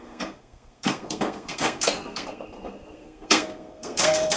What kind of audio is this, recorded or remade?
remade